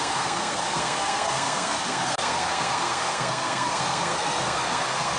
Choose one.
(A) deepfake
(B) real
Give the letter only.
A